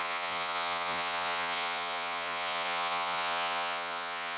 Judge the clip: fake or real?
fake